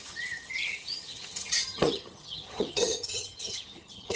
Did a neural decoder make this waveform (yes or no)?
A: yes